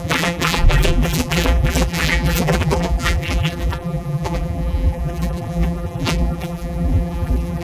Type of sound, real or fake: fake